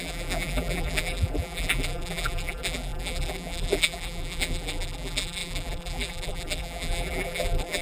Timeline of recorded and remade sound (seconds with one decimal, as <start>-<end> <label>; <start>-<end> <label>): 0.0-7.8 remade